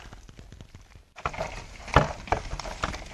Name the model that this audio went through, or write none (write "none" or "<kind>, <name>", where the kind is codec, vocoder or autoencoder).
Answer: none